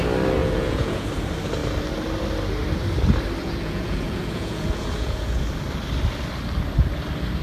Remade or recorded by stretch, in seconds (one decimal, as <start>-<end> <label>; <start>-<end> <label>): 0.0-0.4 recorded; 0.4-1.1 remade; 1.1-3.4 recorded; 3.4-5.4 remade; 5.4-7.4 recorded